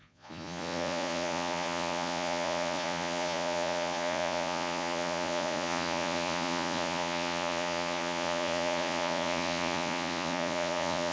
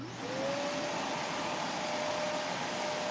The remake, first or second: first